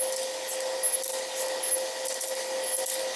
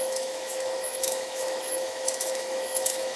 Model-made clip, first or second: second